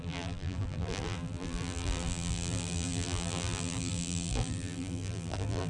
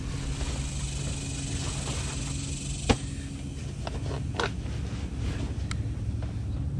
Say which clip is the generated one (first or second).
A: first